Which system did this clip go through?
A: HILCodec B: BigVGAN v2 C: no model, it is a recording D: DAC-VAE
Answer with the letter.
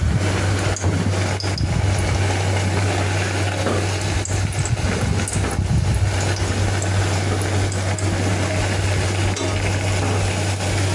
C